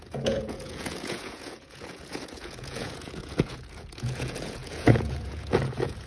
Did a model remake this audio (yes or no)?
yes